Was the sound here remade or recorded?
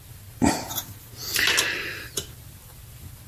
recorded